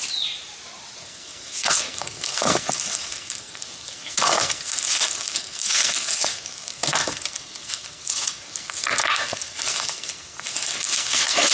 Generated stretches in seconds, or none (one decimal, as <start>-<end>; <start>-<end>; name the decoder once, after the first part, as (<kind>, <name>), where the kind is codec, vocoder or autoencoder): 1.0-11.5 (codec, SNAC)